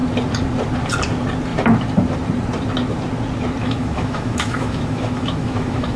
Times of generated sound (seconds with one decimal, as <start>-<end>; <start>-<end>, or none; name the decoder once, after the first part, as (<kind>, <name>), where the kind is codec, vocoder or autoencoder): 3.6-6.0 (autoencoder, DAC-VAE)